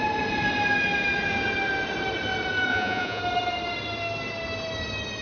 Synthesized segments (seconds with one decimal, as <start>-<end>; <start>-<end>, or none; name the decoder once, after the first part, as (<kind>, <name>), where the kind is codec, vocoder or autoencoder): 2.7-3.2 (vocoder, Vocos)